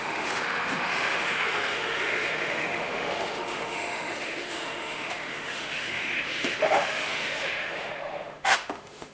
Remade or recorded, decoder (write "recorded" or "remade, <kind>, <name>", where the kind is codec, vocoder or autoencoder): remade, autoencoder, DAC-VAE